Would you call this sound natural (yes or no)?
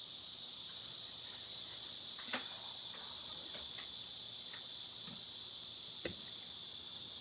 yes